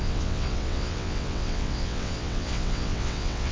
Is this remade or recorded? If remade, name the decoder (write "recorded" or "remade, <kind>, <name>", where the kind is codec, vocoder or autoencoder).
remade, vocoder, WaveNeXt